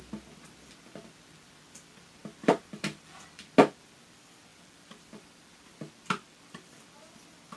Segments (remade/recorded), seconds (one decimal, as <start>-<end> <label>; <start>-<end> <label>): 0.0-2.2 recorded; 2.2-3.5 remade; 3.5-4.5 recorded; 4.5-6.8 remade; 6.8-7.6 recorded